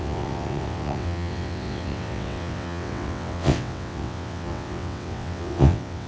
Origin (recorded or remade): remade